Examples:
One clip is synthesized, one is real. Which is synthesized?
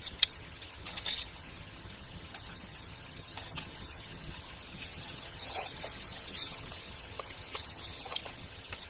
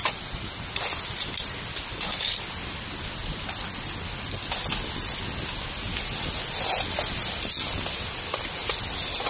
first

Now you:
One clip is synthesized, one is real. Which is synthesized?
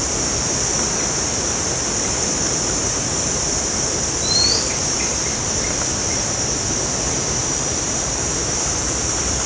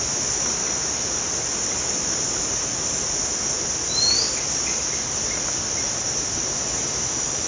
first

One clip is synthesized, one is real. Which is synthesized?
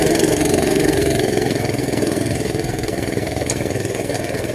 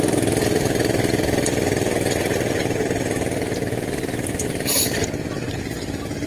first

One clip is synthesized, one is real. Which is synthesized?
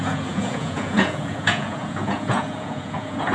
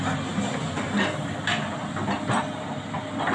first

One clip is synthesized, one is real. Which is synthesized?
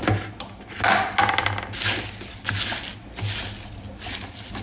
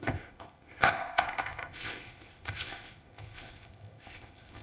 second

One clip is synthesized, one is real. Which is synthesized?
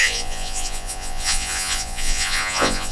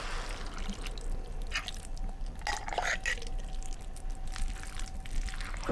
first